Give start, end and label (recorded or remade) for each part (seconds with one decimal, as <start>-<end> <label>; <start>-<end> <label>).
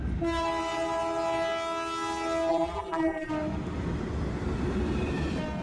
0.0-2.5 recorded; 2.5-3.3 remade; 3.3-5.6 recorded